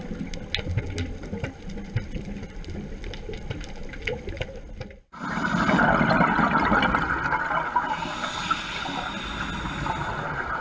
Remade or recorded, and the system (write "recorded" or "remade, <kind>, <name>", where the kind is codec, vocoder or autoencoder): recorded